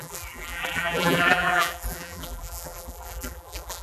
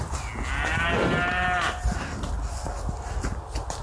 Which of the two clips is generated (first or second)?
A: first